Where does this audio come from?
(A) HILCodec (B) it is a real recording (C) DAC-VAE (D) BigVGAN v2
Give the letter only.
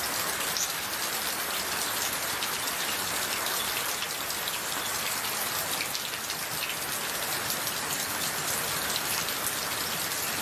B